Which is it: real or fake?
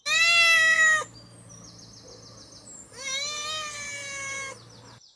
real